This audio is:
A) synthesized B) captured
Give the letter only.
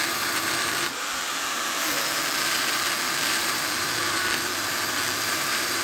A